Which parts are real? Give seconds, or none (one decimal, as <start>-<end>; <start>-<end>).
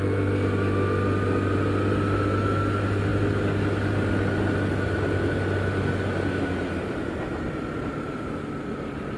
0.0-9.2